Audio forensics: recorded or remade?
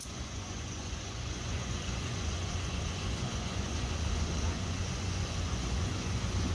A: remade